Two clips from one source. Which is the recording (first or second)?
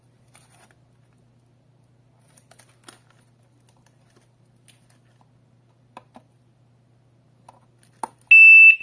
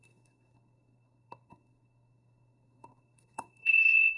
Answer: first